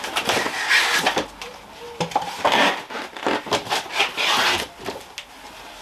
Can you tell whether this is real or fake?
real